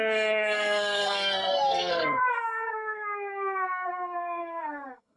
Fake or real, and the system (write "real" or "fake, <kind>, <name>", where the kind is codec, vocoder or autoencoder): fake, codec, SNAC